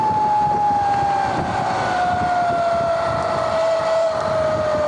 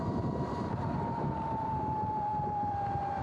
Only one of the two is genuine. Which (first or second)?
first